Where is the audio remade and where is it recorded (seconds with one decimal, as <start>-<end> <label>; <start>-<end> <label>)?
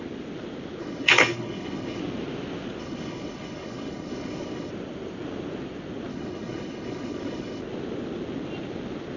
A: 0.0-0.8 recorded; 0.8-2.0 remade; 2.0-2.8 recorded; 2.8-4.7 remade; 4.7-6.1 recorded; 6.1-7.6 remade; 7.6-9.2 recorded